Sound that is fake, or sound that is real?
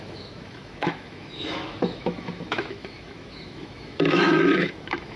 fake